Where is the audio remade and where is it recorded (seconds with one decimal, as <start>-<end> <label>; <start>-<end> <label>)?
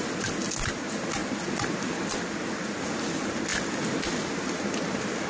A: 0.0-5.3 recorded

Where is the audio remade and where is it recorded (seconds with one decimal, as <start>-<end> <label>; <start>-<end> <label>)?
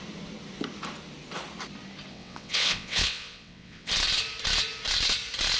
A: 0.0-2.1 recorded; 2.1-3.9 remade; 3.9-5.6 recorded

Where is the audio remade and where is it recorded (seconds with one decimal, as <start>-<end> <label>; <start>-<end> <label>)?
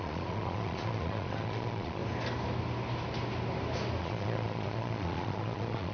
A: 0.0-2.0 remade; 2.0-4.0 recorded; 4.0-5.9 remade